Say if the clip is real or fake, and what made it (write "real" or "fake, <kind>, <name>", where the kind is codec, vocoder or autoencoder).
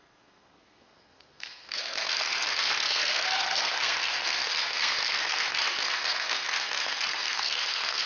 fake, codec, SNAC